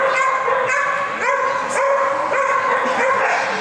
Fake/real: real